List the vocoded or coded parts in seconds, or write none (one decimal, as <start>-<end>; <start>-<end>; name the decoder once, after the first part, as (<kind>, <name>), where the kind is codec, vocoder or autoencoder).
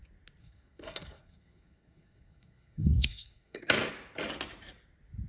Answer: 0.4-3.6 (codec, SNAC)